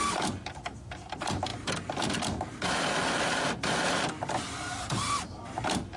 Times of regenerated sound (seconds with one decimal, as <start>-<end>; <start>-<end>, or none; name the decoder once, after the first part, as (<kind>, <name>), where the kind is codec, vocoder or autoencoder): none